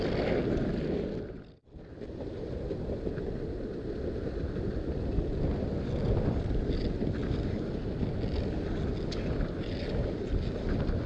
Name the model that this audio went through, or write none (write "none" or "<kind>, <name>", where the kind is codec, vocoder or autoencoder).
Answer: none